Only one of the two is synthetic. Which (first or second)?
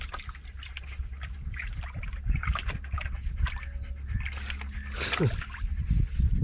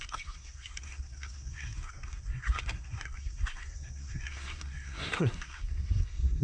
second